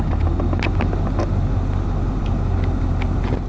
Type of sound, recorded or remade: recorded